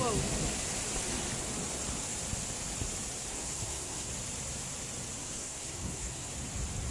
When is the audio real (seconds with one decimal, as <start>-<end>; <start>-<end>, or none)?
0.0-3.3; 4.1-5.2; 6.3-6.9